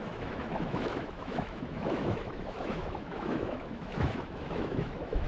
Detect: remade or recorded remade